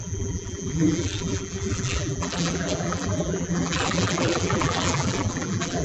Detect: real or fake fake